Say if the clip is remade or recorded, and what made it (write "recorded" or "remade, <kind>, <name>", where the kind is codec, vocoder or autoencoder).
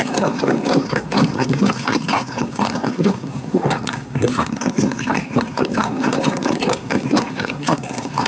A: remade, codec, SNAC